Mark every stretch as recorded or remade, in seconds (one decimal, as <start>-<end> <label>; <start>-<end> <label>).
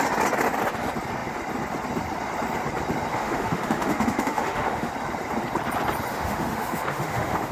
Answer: 0.0-3.1 recorded; 3.1-4.9 remade; 4.9-6.1 recorded; 6.1-7.5 remade